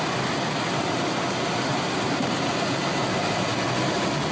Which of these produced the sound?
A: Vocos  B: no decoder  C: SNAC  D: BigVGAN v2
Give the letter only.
B